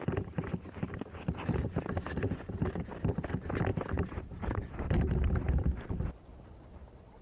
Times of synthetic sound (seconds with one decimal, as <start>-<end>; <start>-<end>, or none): 1.6-3.2; 3.7-6.1